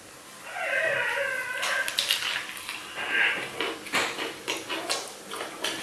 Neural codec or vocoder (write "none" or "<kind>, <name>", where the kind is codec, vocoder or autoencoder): none